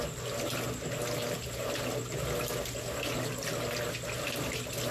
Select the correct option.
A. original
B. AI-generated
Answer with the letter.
A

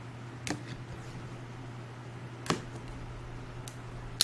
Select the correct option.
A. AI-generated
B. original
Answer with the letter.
B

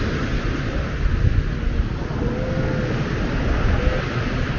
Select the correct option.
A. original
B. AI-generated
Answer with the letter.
A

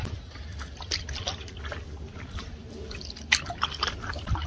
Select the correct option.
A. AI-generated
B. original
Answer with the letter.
B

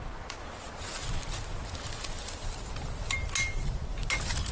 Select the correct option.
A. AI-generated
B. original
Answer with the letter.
B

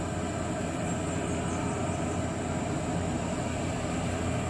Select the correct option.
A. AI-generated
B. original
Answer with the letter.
B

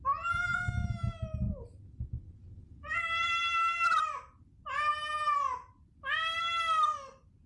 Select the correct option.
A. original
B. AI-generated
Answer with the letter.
A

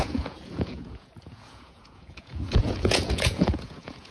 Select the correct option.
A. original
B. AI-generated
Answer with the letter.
B